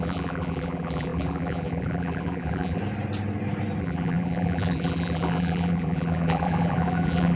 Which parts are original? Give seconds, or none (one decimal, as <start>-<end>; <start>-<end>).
2.8-3.8